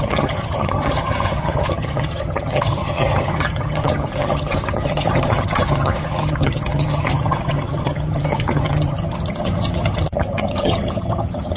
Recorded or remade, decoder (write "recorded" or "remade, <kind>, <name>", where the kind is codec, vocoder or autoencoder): remade, vocoder, HiFi-GAN